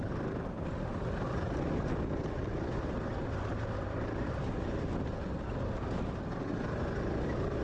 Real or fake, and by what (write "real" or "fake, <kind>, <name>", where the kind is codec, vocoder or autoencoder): real